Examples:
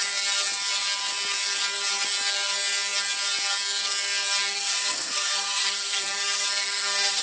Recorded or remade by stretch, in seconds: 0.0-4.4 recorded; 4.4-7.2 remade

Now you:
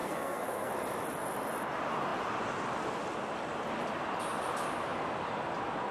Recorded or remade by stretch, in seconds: 0.0-0.7 remade; 0.7-5.9 recorded

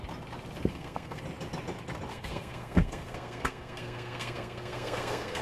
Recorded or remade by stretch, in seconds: 0.0-0.7 recorded; 0.7-1.2 remade; 1.2-2.1 recorded; 2.1-5.4 remade

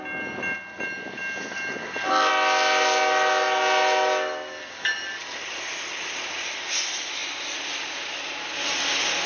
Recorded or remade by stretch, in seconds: 0.0-9.3 recorded

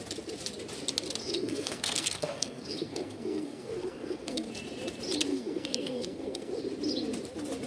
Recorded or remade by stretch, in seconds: 0.0-1.2 recorded; 1.2-4.5 remade; 4.5-5.3 recorded; 5.3-6.5 remade; 6.5-7.7 recorded